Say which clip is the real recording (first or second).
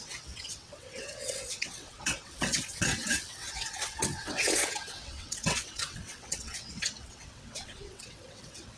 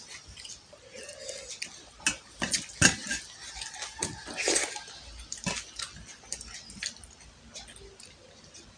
second